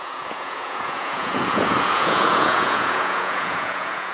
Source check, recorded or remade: remade